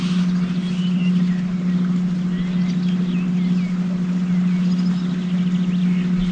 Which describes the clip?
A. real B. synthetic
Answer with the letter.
A